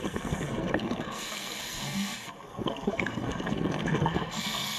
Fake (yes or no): yes